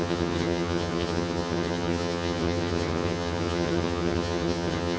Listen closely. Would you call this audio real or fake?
fake